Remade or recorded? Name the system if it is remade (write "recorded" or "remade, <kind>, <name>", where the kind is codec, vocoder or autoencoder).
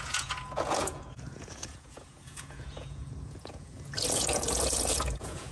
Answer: remade, vocoder, Vocos